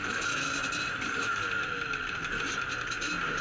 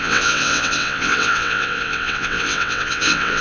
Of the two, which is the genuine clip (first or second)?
first